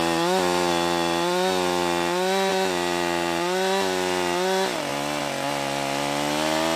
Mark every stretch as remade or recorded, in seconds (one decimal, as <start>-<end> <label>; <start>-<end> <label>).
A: 0.0-6.8 recorded